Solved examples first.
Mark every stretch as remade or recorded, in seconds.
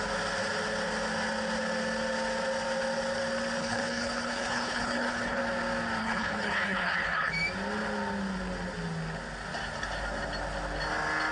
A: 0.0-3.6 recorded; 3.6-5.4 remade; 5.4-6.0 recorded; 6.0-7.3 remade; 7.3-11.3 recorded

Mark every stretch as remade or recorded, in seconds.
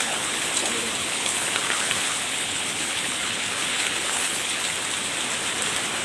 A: 0.0-0.5 remade; 0.5-1.0 recorded; 1.0-4.6 remade; 4.6-6.0 recorded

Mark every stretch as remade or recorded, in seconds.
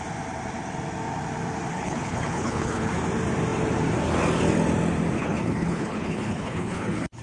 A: 0.0-1.7 recorded; 1.7-2.9 remade; 2.9-5.2 recorded; 5.2-7.2 remade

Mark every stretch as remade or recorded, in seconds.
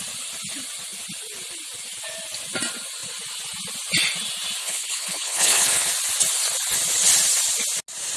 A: 0.0-4.6 recorded; 4.6-5.9 remade; 5.9-8.2 recorded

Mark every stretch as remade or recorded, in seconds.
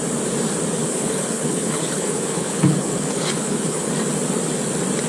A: 0.0-0.8 recorded; 0.8-3.9 remade; 3.9-5.1 recorded